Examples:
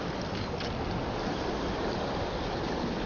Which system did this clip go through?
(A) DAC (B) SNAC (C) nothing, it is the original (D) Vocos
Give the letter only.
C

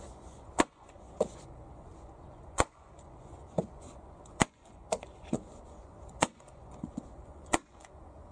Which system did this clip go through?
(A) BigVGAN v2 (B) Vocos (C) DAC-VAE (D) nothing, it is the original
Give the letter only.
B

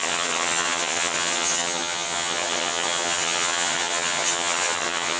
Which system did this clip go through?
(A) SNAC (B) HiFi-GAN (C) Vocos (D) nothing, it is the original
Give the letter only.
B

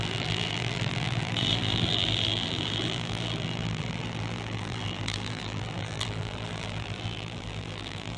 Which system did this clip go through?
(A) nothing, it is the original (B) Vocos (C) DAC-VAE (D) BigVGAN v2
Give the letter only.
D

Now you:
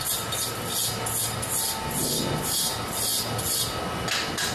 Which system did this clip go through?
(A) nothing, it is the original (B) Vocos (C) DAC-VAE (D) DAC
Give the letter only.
A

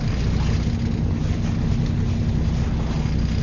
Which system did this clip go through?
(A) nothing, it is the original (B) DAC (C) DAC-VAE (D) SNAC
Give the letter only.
A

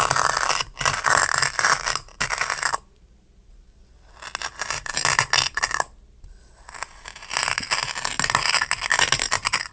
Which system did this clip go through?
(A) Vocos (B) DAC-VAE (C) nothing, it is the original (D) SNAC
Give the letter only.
C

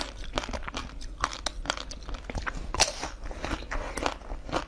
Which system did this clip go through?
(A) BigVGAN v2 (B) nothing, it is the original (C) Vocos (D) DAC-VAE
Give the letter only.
B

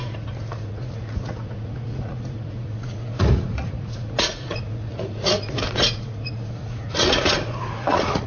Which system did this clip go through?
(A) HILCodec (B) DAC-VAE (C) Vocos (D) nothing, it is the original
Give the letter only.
C